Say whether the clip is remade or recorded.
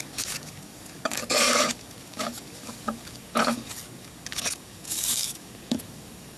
remade